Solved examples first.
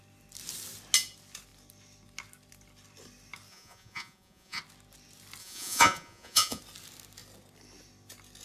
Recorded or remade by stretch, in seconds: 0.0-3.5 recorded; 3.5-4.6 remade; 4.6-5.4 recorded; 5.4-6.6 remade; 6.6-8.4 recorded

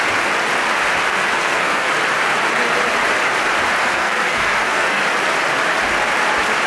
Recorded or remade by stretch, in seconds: 0.0-1.1 recorded; 1.1-1.9 remade; 1.9-3.8 recorded; 3.8-5.0 remade; 5.0-6.7 recorded